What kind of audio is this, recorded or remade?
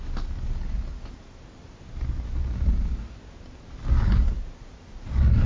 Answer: recorded